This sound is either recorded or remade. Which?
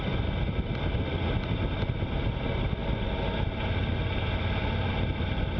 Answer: recorded